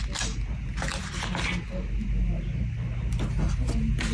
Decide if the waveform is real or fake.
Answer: real